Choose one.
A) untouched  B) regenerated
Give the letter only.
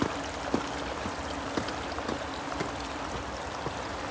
A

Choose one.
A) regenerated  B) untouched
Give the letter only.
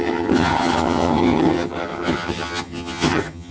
A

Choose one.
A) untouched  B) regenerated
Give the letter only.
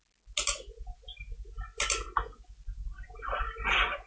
A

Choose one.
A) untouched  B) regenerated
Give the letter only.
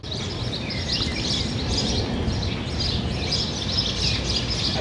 A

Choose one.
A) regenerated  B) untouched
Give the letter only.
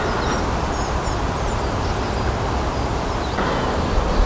B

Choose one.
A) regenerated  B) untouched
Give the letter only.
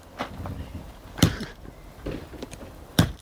A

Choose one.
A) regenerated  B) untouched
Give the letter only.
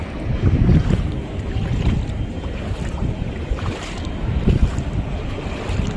B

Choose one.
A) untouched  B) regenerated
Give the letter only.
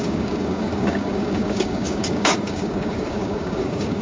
B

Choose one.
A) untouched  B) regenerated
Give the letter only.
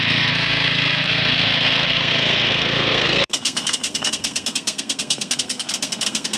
B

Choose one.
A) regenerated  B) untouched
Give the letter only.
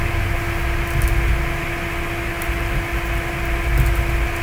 B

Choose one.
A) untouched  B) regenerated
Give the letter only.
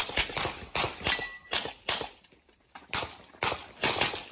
A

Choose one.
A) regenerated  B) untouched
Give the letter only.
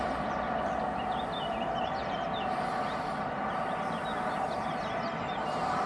B